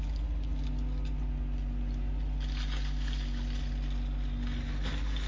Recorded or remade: recorded